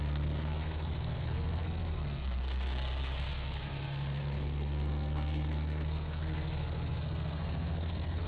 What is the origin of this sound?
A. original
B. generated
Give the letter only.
B